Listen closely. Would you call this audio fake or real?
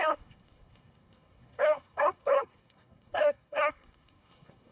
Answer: fake